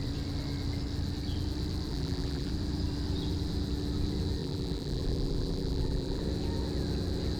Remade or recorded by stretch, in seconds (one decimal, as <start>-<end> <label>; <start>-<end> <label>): 0.0-1.9 recorded; 1.9-2.5 remade; 2.5-4.4 recorded; 4.4-6.2 remade; 6.2-7.4 recorded

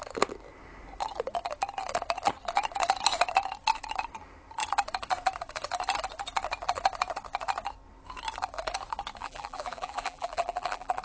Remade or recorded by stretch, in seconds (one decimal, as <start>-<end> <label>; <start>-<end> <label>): 0.0-9.2 recorded; 9.2-11.0 remade

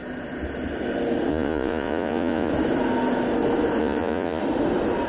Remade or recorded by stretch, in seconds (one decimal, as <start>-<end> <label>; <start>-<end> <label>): 0.0-1.3 recorded; 1.3-2.5 remade; 2.5-3.8 recorded; 3.8-4.4 remade; 4.4-5.1 recorded

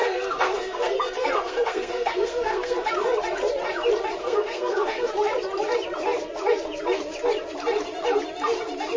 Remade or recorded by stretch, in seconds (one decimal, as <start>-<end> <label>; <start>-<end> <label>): 0.0-2.9 remade; 2.9-4.2 recorded; 4.2-5.1 remade; 5.1-9.0 recorded

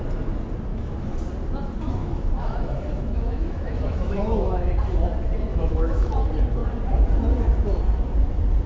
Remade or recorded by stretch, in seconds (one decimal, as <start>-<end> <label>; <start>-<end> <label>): 0.0-0.7 recorded; 0.7-1.2 remade; 1.2-2.0 recorded; 2.0-4.7 remade; 4.7-5.5 recorded; 5.5-6.1 remade; 6.1-8.7 recorded